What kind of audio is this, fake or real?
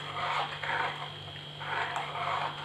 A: real